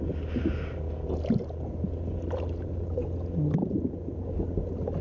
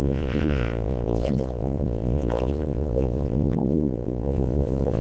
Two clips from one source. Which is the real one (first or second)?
first